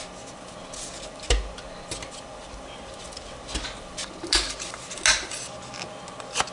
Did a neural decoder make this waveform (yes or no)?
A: no